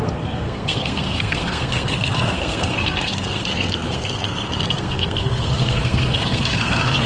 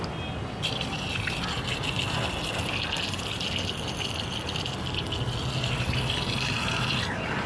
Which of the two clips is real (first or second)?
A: second